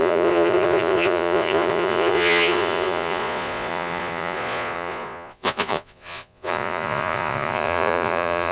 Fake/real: fake